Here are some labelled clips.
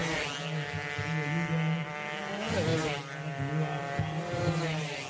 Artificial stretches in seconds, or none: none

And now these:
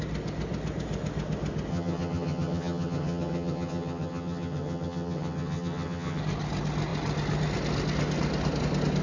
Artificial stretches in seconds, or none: 1.7-6.2 (vocoder, HiFi-GAN)

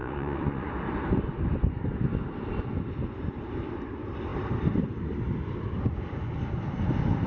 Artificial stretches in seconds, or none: 0.0-0.7 (vocoder, Vocos)

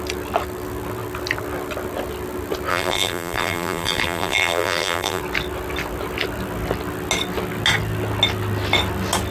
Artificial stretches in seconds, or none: 2.7-5.2 (vocoder, BigVGAN v2)